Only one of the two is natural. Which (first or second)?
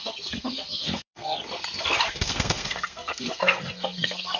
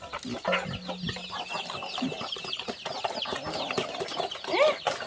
second